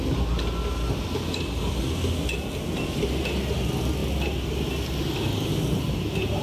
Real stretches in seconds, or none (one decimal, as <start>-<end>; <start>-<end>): 0.0-6.4